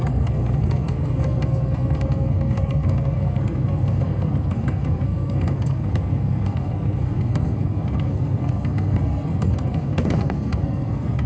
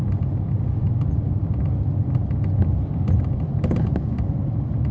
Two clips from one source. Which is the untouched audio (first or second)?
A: second